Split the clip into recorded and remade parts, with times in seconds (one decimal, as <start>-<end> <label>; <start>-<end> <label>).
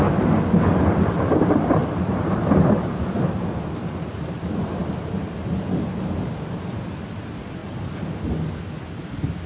0.0-1.8 recorded; 1.8-2.4 remade; 2.4-9.5 recorded